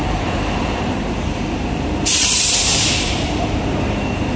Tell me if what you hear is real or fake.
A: fake